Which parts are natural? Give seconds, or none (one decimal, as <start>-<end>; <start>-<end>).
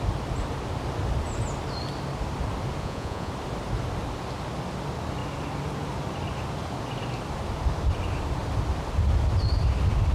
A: 0.0-2.8; 3.3-10.1